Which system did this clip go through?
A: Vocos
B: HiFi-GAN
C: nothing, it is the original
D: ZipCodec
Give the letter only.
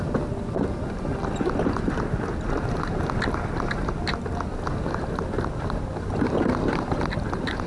C